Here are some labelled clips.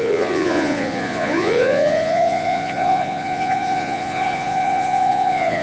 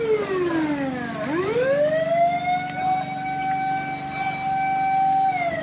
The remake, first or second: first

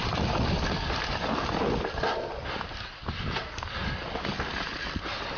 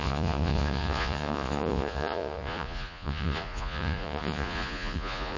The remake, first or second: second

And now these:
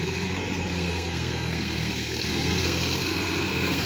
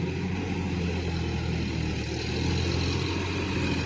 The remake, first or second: first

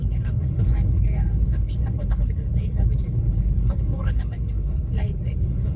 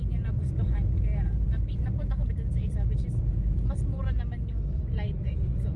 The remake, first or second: first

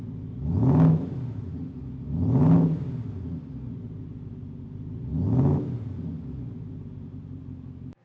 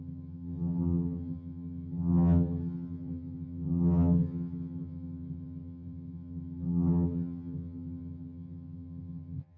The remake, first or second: second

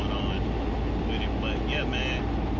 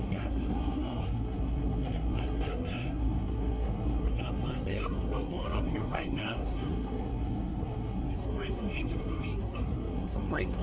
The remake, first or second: second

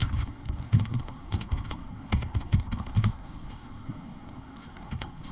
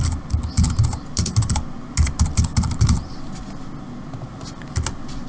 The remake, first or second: first